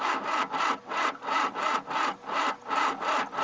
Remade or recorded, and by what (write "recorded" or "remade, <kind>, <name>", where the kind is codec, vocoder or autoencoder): recorded